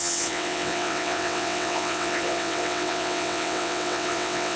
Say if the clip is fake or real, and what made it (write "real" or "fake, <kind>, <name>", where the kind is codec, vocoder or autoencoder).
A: fake, vocoder, WaveNeXt